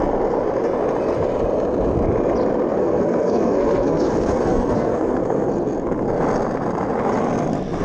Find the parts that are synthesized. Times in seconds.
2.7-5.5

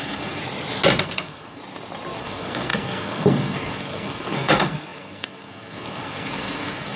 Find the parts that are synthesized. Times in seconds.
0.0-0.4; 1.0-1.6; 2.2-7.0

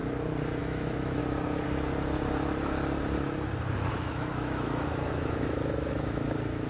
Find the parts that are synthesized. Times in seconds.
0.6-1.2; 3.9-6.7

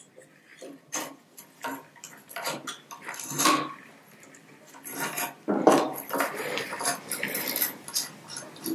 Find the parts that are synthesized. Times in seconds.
0.0-8.7

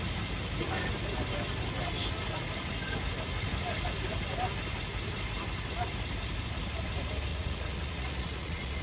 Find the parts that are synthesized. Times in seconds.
7.3-8.8

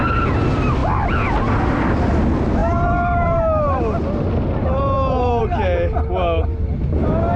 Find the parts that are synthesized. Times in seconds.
none